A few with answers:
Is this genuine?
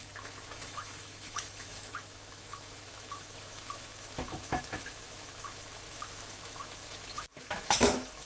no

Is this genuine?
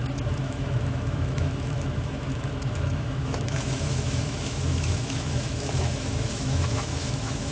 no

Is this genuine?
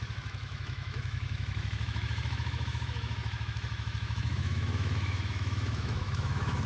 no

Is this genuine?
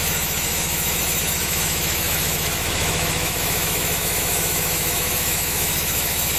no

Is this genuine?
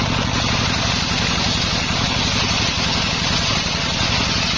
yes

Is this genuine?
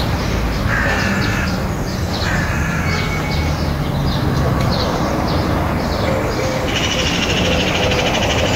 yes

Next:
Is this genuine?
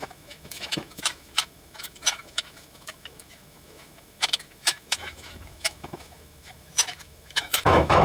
no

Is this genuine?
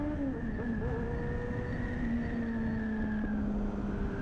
yes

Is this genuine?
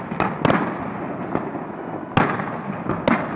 yes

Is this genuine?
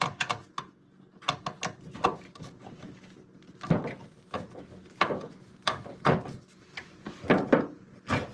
yes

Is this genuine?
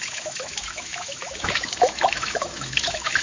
no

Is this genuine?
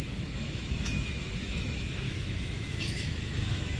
no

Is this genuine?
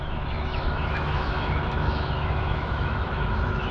no